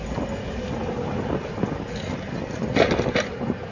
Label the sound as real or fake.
real